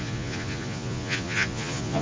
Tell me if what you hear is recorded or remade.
remade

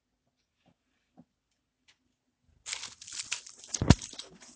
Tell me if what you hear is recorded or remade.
recorded